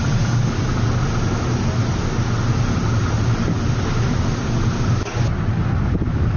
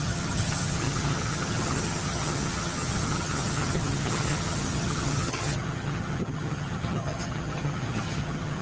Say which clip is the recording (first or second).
first